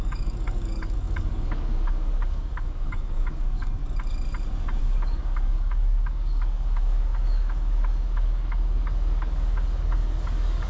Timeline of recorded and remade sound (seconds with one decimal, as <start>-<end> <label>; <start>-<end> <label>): 0.0-3.8 remade; 3.8-4.8 recorded; 4.8-10.7 remade